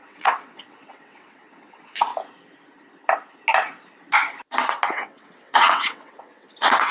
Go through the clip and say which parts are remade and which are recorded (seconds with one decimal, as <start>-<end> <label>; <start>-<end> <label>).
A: 0.0-2.1 remade; 2.1-4.9 recorded; 4.9-6.9 remade